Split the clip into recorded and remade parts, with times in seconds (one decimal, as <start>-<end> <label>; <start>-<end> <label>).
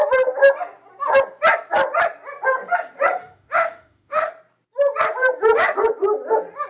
0.0-3.2 recorded; 3.2-4.3 remade; 4.3-6.7 recorded